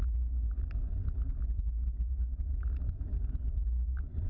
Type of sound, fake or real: real